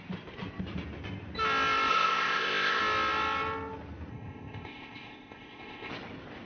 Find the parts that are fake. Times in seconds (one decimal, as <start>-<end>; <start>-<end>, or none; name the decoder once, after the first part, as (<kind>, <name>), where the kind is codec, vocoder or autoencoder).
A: 1.9-2.8 (codec, ZipCodec); 4.1-5.9